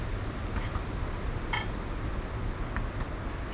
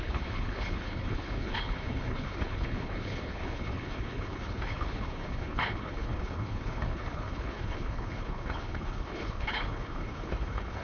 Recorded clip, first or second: first